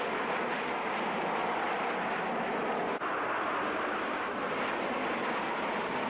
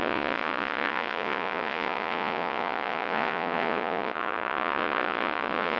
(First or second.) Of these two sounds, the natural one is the first